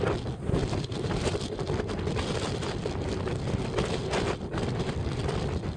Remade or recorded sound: recorded